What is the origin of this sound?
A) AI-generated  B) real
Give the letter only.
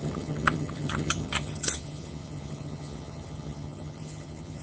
A